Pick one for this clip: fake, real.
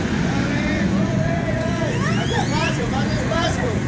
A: fake